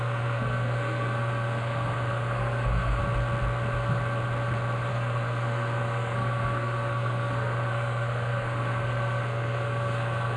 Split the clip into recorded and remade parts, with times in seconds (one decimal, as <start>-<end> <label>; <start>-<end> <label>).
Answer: 0.0-3.0 remade; 3.0-4.9 recorded; 4.9-10.4 remade